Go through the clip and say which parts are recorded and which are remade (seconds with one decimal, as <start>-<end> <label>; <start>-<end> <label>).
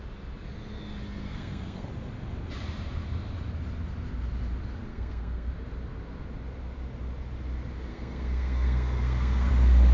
0.0-1.2 recorded; 1.2-1.9 remade; 1.9-4.9 recorded; 4.9-5.5 remade; 5.5-7.9 recorded; 7.9-9.5 remade; 9.5-9.9 recorded